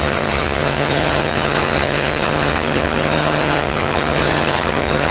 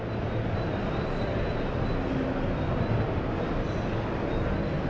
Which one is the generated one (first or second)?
first